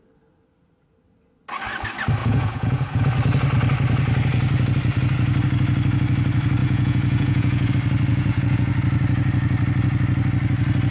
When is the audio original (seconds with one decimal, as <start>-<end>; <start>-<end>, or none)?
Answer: 0.0-2.2; 3.0-6.6; 7.7-8.1; 8.7-10.9